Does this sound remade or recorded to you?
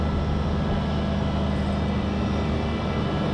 recorded